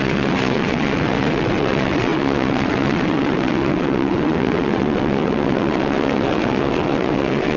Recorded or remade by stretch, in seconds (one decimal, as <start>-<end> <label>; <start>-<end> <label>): 0.0-7.6 remade